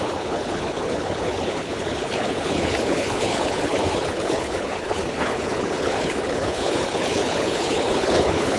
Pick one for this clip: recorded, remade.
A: remade